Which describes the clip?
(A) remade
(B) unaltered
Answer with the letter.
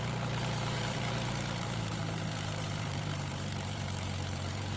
A